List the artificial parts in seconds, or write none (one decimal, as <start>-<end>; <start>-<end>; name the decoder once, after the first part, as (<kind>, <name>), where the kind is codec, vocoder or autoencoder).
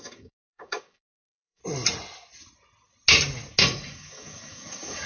0.0-1.6 (codec, DAC); 3.6-5.1